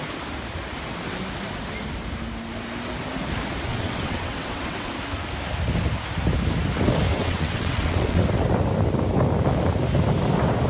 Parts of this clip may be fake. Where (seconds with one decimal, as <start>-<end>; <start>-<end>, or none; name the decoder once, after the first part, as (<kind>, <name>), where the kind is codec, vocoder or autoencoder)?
3.7-4.9 (vocoder, WaveNeXt); 7.1-8.2